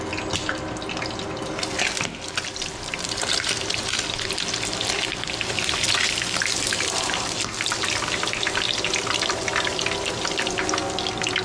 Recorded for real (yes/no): yes